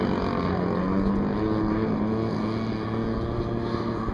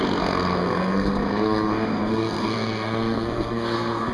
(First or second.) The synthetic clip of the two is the second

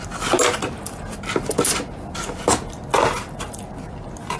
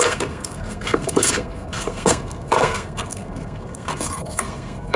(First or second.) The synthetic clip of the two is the second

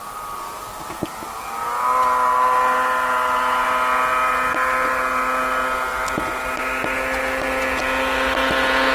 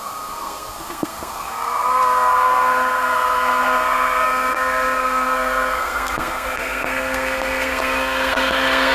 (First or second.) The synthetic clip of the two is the second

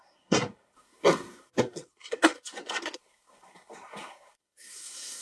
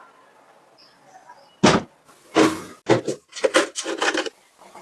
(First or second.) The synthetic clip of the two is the first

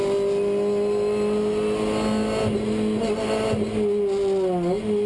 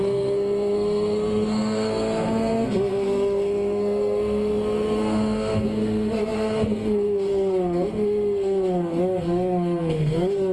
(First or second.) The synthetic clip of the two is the second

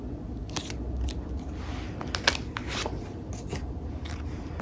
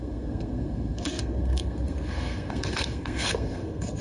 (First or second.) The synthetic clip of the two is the second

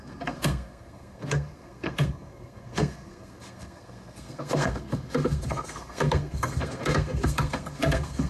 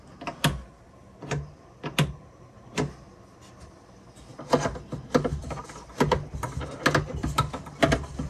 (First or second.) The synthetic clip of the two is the first